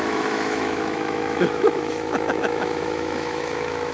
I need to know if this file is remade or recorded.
remade